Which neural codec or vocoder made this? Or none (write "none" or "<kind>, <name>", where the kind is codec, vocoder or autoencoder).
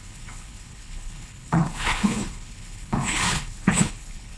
codec, HILCodec